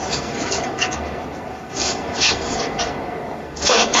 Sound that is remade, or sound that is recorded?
remade